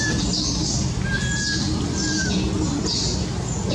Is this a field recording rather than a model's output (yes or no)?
yes